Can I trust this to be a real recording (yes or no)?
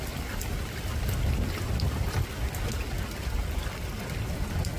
yes